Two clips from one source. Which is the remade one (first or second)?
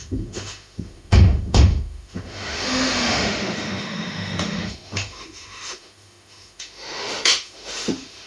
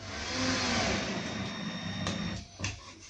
first